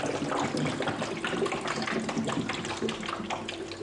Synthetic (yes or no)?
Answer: no